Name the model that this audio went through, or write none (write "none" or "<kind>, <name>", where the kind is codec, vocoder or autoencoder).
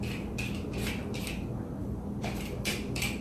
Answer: vocoder, BigVGAN v2